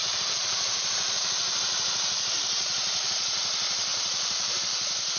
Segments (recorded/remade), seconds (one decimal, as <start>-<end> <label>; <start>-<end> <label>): 0.0-3.1 remade; 3.1-3.9 recorded; 3.9-4.6 remade; 4.6-5.2 recorded